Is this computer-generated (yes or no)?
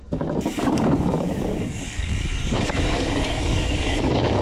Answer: yes